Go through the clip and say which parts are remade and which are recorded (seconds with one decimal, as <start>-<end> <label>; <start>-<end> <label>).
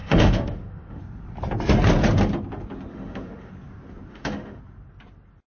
0.0-1.0 remade; 1.0-2.9 recorded; 2.9-3.5 remade; 3.5-4.1 recorded; 4.1-4.6 remade; 4.6-5.5 recorded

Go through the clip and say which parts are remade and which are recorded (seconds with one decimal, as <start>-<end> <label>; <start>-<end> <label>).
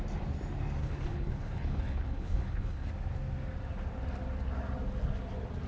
0.0-0.8 recorded; 0.8-2.9 remade; 2.9-5.7 recorded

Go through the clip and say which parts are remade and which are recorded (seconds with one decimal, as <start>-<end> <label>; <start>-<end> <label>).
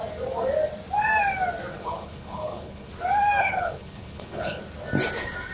0.0-1.7 recorded; 1.7-2.9 remade; 2.9-3.4 recorded; 3.4-4.6 remade; 4.6-5.5 recorded